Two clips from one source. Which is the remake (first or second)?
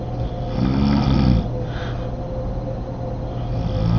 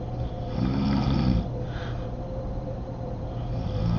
second